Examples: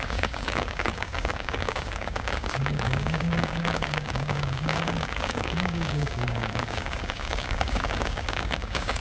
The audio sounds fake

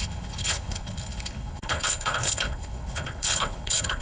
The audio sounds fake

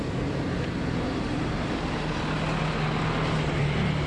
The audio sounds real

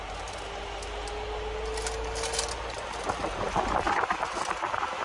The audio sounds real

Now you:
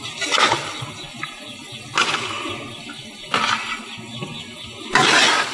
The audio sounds real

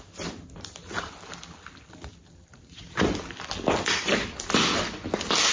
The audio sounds real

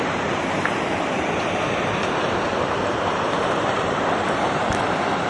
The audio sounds fake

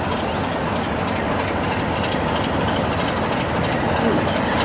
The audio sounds real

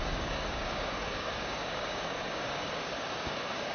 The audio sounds fake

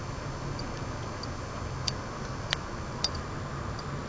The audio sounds real